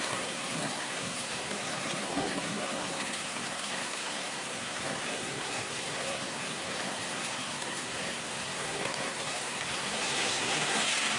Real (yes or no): no